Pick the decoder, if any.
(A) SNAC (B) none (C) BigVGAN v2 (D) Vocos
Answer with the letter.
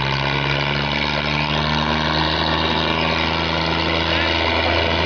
B